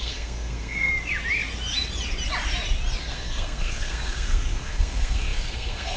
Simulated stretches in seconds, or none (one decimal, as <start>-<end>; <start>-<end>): 0.0-0.9; 3.1-6.0

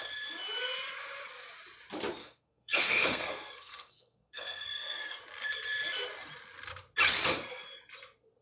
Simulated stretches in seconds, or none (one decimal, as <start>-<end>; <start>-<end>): 2.2-5.2

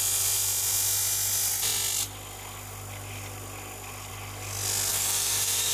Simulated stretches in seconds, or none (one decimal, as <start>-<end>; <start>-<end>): 4.9-5.7

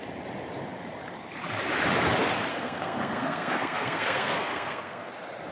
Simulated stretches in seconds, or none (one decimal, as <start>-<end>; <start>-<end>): 2.5-5.1

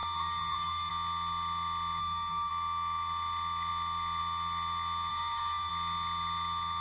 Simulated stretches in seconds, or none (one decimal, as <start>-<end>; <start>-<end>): 0.0-0.9; 2.0-2.5; 5.1-5.7

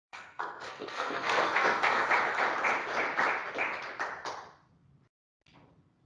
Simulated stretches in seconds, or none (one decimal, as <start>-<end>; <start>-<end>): 0.0-2.1

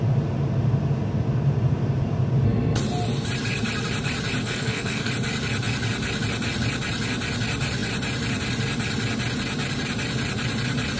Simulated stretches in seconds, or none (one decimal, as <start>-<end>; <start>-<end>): 4.4-5.1

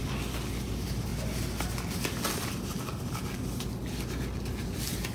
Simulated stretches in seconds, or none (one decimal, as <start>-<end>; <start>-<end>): none